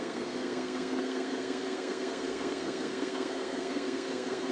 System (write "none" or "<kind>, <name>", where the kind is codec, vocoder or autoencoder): codec, SNAC